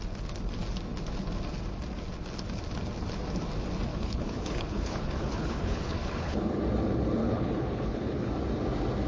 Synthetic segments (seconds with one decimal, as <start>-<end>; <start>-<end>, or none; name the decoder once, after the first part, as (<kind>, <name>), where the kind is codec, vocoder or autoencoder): 3.9-6.6 (codec, HILCodec); 7.2-8.3